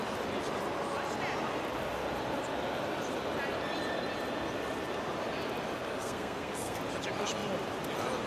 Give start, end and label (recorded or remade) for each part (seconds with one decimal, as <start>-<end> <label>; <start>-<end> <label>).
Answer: 0.0-6.0 recorded; 6.0-6.8 remade; 6.8-8.3 recorded

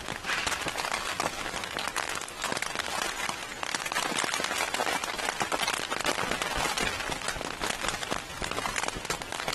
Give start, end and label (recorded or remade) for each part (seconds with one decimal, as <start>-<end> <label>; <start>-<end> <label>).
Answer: 0.0-0.9 recorded; 0.9-2.5 remade; 2.5-9.5 recorded

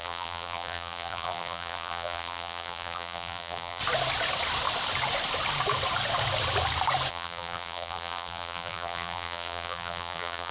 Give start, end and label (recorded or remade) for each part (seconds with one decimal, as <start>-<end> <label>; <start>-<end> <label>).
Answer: 0.0-3.8 remade; 3.8-7.1 recorded; 7.1-10.5 remade

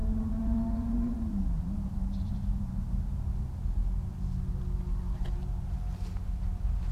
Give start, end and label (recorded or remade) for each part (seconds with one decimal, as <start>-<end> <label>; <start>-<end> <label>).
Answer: 0.0-3.0 remade; 3.0-6.9 recorded

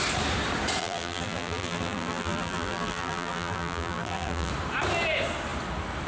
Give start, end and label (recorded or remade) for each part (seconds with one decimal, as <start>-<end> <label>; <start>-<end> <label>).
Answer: 0.0-0.8 recorded; 0.8-4.5 remade; 4.5-6.1 recorded